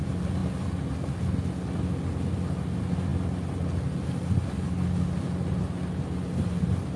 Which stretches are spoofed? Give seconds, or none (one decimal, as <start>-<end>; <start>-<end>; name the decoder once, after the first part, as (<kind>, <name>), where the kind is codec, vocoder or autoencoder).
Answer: none